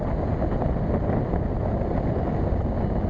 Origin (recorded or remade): recorded